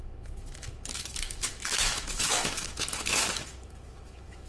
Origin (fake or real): fake